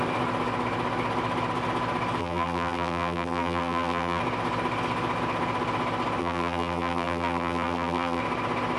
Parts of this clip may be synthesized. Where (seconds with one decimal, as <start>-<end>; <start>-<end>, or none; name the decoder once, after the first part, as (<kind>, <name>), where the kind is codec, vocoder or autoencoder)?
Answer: 2.2-4.2 (vocoder, BigVGAN v2); 6.2-8.2